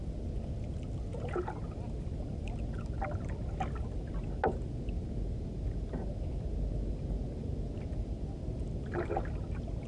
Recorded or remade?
recorded